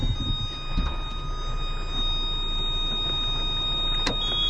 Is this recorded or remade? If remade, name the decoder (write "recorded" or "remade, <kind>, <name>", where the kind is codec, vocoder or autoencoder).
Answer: recorded